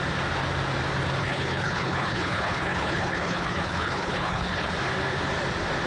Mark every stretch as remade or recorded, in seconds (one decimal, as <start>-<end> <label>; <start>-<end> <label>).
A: 0.0-1.2 recorded; 1.2-4.7 remade; 4.7-5.9 recorded